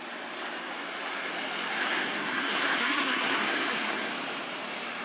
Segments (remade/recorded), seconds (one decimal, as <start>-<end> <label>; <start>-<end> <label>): 0.0-1.7 recorded; 1.7-4.1 remade; 4.1-5.0 recorded

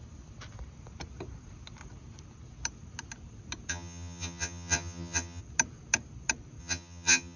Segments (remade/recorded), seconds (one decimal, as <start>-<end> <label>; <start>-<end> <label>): 0.0-3.7 recorded; 3.7-5.4 remade; 5.4-6.6 recorded; 6.6-7.4 remade

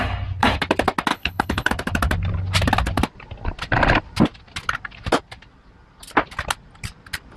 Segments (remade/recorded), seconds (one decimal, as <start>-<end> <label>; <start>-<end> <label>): 0.0-1.1 recorded; 1.1-1.7 remade; 1.7-7.4 recorded

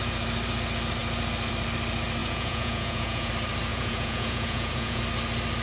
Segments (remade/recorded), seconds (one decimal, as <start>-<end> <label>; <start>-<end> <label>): 0.0-2.2 recorded; 2.2-3.3 remade; 3.3-3.7 recorded; 3.7-5.0 remade; 5.0-5.6 recorded

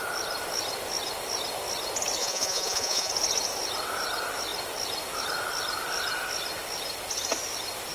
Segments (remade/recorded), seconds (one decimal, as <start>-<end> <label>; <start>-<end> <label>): 0.0-2.2 recorded; 2.2-3.1 remade; 3.1-7.9 recorded

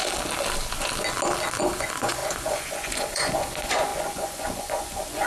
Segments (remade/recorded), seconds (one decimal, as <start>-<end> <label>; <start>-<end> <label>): 0.0-1.6 recorded; 1.6-5.3 remade

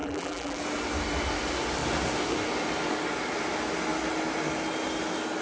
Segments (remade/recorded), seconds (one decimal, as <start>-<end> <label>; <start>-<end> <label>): 0.0-0.6 remade; 0.6-5.4 recorded